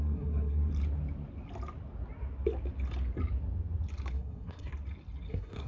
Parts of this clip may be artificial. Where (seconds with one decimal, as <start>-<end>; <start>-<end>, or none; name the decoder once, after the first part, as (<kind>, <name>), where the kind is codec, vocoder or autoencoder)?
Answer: 0.0-0.7 (codec, SNAC); 4.1-4.7; 5.3-5.7